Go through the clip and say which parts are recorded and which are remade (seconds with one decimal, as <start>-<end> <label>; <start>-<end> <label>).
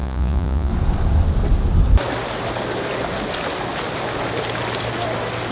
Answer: 0.0-0.7 remade; 0.7-5.5 recorded